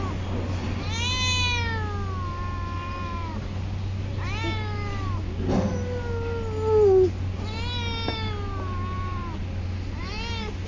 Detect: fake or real real